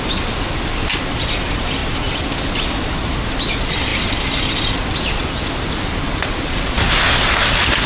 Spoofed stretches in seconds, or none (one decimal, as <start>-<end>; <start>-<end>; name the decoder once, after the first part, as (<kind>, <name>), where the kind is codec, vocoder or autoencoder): none